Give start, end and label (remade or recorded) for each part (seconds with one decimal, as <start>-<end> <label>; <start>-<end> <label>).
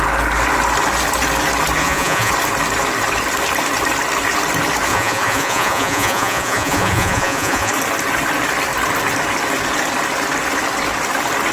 0.0-1.8 recorded; 1.8-2.3 remade; 2.3-4.9 recorded; 4.9-7.7 remade; 7.7-11.5 recorded